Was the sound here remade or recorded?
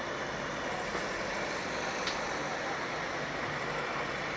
recorded